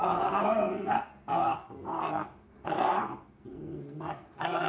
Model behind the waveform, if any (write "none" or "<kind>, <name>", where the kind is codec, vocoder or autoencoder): codec, SNAC